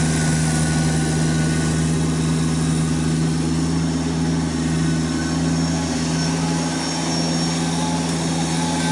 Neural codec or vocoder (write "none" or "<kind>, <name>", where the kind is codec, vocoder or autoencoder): none